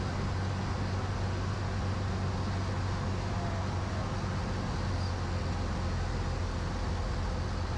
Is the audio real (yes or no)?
yes